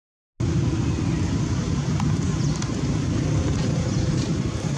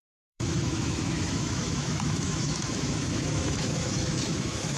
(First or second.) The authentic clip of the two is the first